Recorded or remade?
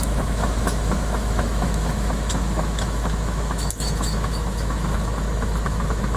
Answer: remade